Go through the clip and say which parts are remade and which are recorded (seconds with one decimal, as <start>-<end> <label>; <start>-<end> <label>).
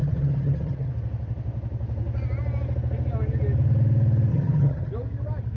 0.0-0.9 remade; 0.9-4.3 recorded; 4.3-4.9 remade; 4.9-5.6 recorded